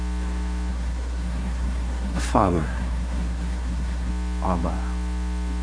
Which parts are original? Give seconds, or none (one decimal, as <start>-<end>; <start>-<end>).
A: 0.0-0.7; 4.1-5.6